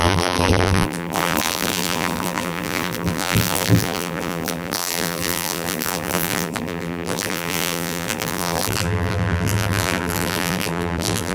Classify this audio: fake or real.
fake